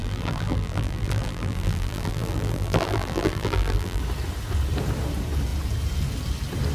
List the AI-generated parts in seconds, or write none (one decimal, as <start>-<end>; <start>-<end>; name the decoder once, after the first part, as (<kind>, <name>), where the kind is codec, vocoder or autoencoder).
0.0-4.0 (vocoder, BigVGAN v2)